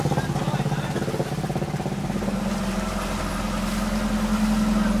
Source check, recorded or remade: recorded